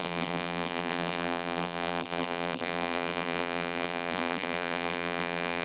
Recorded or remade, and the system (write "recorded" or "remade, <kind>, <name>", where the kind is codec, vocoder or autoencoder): remade, vocoder, BigVGAN v2